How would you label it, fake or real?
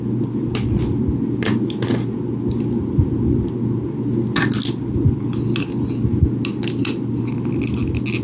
real